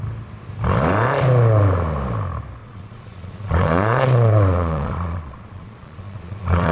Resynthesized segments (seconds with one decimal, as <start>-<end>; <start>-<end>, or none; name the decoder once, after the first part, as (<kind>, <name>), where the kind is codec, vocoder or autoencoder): 2.6-6.7 (vocoder, Vocos)

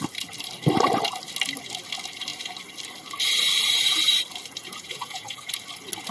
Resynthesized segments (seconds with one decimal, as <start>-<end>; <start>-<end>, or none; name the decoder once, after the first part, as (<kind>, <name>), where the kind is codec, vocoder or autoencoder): 4.6-5.5 (vocoder, Vocos)

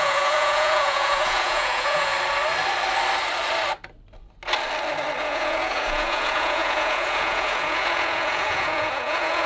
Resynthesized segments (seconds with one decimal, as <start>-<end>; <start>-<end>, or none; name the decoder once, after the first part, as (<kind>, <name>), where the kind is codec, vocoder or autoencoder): 0.0-2.1 (vocoder, Vocos); 5.2-9.5

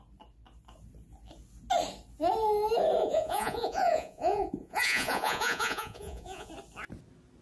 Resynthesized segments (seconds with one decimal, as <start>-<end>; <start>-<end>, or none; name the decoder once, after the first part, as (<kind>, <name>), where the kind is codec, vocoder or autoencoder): 3.0-6.5 (vocoder, Vocos)

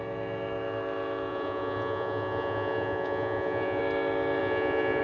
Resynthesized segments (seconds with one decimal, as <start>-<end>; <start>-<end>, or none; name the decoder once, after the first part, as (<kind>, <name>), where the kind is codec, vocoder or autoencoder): 1.3-3.8 (vocoder, Vocos); 4.4-5.0

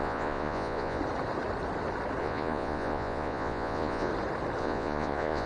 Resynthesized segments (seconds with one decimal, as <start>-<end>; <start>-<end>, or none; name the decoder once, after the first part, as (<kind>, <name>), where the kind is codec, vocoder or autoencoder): 0.0-1.0 (vocoder, Vocos); 2.2-4.1; 4.6-5.5